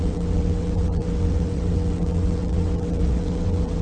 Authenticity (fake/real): fake